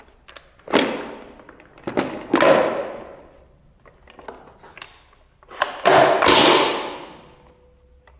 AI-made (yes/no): no